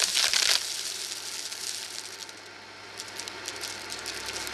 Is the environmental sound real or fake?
real